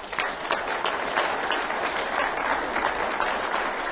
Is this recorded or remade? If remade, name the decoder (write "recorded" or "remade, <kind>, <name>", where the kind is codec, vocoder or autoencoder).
recorded